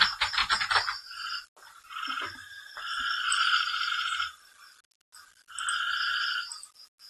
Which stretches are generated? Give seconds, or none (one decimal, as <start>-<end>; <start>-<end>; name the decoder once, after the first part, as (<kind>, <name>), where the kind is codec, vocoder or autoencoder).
none